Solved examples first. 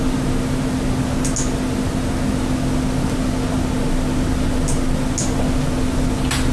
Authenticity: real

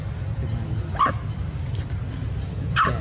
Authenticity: real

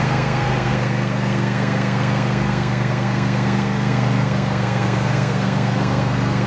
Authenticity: fake